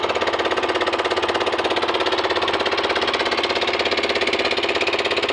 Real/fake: real